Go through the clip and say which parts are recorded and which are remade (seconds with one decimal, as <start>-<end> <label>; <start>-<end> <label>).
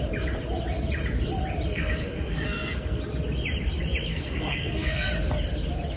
0.0-1.7 recorded; 1.7-3.0 remade; 3.0-4.1 recorded; 4.1-5.1 remade; 5.1-6.0 recorded